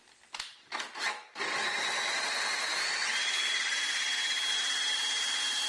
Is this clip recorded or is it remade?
recorded